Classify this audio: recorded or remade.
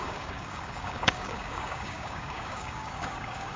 remade